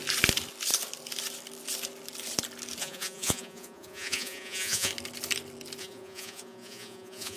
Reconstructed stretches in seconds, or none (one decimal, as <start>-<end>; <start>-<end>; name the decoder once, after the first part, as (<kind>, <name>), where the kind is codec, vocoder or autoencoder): 2.8-4.9 (vocoder, Vocos); 5.8-7.4